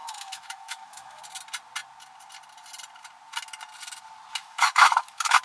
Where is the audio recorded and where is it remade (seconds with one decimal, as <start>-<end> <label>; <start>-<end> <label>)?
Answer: 0.0-1.2 remade; 1.2-4.4 recorded; 4.4-5.4 remade